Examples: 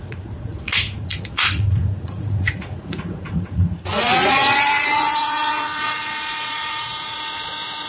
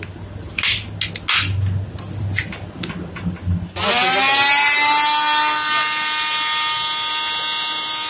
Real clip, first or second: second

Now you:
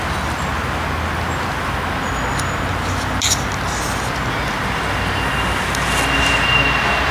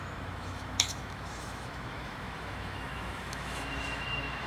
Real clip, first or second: first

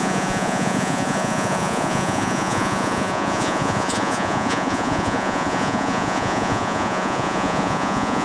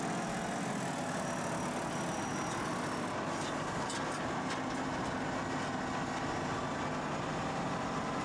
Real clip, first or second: second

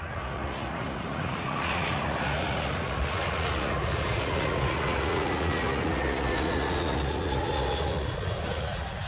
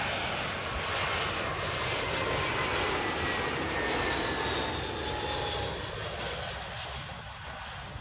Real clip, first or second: second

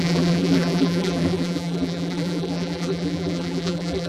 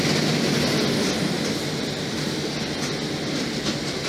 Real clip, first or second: second